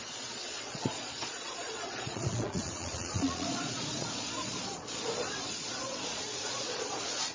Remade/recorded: remade